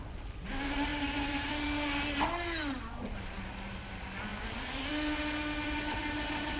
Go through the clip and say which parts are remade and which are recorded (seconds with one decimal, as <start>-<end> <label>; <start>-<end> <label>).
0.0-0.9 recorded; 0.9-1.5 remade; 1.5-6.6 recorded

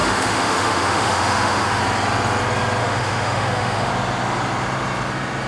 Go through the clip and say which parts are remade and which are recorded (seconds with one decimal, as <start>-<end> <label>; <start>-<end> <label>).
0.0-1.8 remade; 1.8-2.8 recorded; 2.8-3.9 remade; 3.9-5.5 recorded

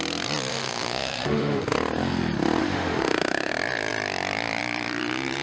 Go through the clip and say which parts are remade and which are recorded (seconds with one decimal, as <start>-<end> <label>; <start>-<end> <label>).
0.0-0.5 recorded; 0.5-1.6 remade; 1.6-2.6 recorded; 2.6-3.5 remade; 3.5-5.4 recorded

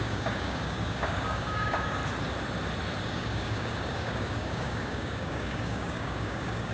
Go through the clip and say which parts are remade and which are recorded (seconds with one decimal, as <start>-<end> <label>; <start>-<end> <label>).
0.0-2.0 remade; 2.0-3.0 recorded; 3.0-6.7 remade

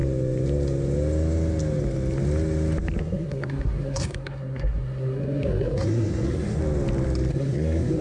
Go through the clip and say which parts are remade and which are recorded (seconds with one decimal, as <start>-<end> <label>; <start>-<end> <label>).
0.0-3.0 recorded; 3.0-6.6 remade; 6.6-7.3 recorded; 7.3-8.0 remade